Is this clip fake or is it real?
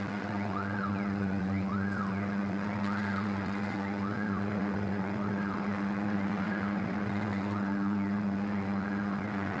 fake